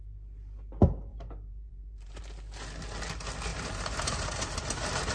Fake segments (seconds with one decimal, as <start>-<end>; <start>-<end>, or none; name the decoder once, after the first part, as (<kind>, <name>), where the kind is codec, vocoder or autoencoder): 1.1-2.2 (vocoder, BigVGAN v2); 3.5-5.1